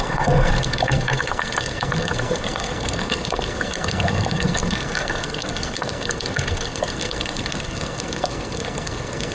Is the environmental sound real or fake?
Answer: fake